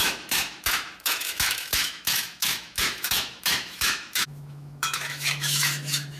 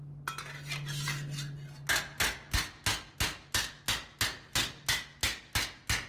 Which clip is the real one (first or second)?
second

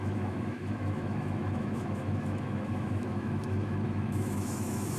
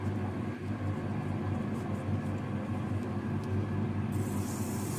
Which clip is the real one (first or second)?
second